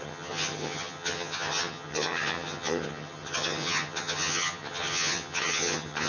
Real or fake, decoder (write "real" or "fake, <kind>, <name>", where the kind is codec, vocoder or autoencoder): fake, vocoder, HiFi-GAN